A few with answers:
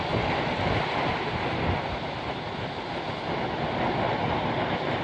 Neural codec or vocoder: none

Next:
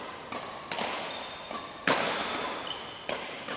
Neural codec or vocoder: none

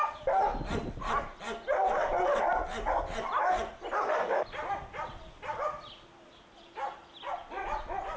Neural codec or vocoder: none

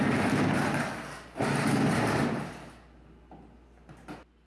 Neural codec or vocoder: none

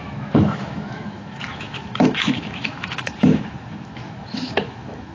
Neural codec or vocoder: autoencoder, DAC-VAE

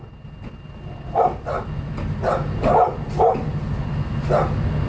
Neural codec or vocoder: none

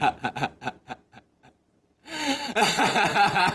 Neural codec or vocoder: none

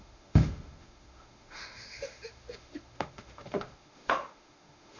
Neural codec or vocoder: autoencoder, DAC-VAE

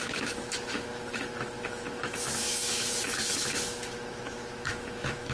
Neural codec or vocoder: autoencoder, DAC-VAE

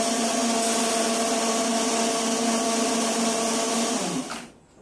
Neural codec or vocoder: none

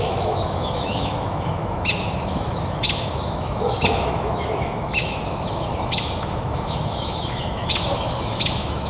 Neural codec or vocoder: autoencoder, DAC-VAE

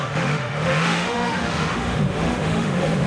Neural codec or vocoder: autoencoder, DAC-VAE